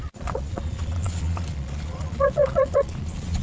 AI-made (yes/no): yes